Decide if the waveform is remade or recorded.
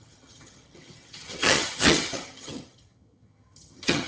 remade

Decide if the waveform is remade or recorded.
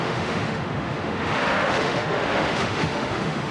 remade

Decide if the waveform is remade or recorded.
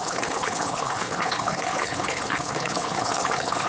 remade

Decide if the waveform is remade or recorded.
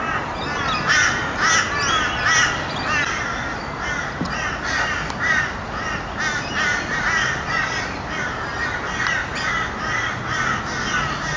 recorded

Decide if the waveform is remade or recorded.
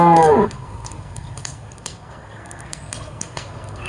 remade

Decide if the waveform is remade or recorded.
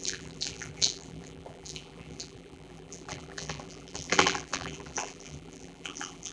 remade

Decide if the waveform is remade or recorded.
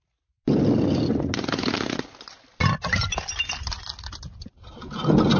recorded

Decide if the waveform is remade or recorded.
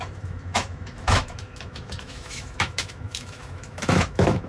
remade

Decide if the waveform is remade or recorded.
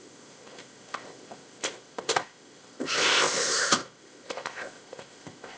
remade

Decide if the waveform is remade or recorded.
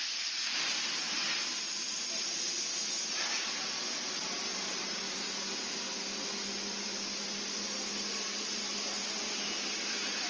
recorded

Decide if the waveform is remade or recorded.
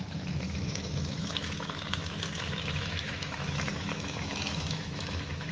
remade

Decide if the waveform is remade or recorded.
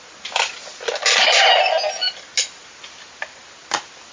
recorded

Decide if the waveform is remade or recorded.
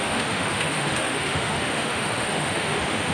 remade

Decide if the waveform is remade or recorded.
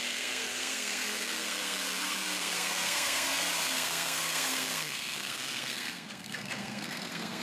remade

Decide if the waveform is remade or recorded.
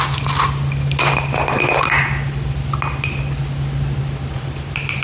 recorded